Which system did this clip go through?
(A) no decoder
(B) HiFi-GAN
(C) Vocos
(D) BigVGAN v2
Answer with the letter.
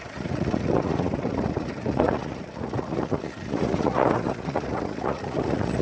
C